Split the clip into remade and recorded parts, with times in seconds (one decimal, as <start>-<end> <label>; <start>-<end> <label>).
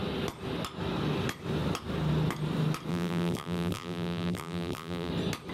0.0-2.9 recorded; 2.9-5.1 remade; 5.1-5.5 recorded